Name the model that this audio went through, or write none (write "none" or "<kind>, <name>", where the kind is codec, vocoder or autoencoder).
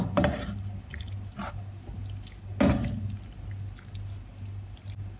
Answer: none